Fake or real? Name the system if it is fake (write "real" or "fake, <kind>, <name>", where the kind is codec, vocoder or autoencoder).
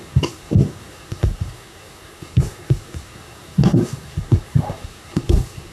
fake, codec, SNAC